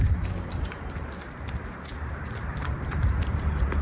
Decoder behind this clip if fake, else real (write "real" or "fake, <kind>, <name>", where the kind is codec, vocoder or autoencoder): fake, vocoder, BigVGAN v2